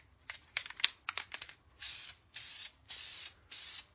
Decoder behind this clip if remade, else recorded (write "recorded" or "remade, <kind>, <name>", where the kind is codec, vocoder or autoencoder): recorded